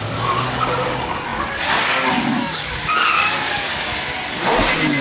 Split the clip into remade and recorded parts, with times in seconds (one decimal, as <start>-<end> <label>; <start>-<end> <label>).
0.0-3.7 remade; 3.7-5.0 recorded